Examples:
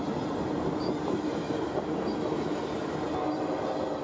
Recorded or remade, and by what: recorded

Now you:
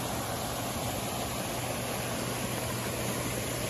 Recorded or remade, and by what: recorded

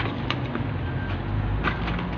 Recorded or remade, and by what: recorded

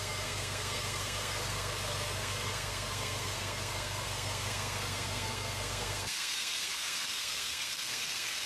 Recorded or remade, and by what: remade, codec, SNAC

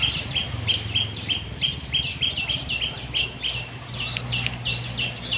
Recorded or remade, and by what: recorded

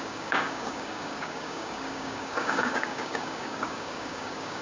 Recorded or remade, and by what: remade, codec, DAC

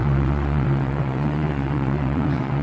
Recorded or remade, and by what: remade, vocoder, WaveNeXt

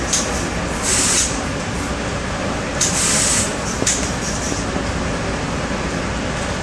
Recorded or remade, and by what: recorded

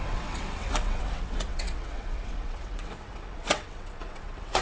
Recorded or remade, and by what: remade, vocoder, WaveNeXt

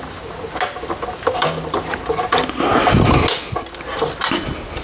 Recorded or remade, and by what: recorded